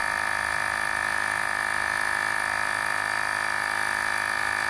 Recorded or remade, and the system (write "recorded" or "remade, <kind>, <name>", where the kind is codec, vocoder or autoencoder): recorded